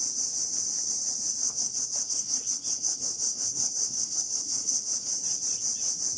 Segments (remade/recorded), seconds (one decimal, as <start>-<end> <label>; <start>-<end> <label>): 0.0-1.4 recorded; 1.4-5.1 remade; 5.1-6.2 recorded

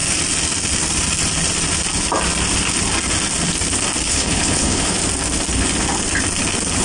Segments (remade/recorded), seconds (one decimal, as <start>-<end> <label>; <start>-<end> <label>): 0.0-4.1 recorded; 4.1-5.0 remade; 5.0-6.8 recorded

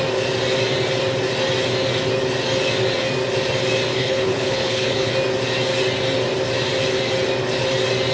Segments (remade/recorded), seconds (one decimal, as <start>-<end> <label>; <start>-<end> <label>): 0.0-3.9 recorded; 3.9-5.1 remade; 5.1-8.1 recorded

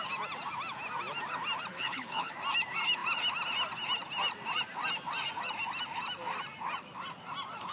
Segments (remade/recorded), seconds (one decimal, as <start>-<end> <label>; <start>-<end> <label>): 0.0-1.7 recorded; 1.7-2.3 remade; 2.3-7.7 recorded

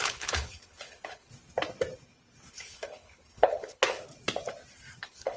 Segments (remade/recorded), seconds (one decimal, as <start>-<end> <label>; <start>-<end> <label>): 0.0-1.3 remade; 1.3-2.5 recorded; 2.5-4.1 remade; 4.1-5.0 recorded; 5.0-5.4 remade

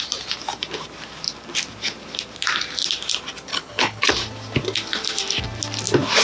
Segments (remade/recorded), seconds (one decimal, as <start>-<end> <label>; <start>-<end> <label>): 0.0-3.5 recorded; 3.5-4.0 remade; 4.0-6.2 recorded